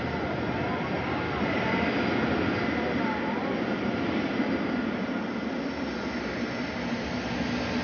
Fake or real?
real